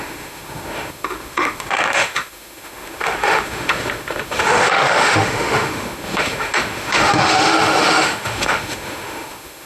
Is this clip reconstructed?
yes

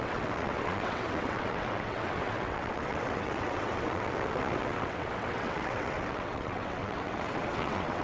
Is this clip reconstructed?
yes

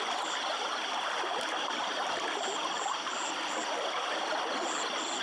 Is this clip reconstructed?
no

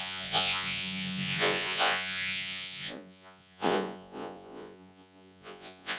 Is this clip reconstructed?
yes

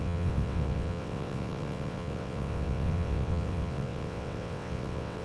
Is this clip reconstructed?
yes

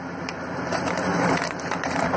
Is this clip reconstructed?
yes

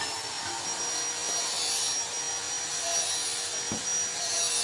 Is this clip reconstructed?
no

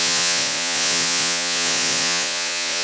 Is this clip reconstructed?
yes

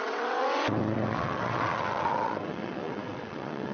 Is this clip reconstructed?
yes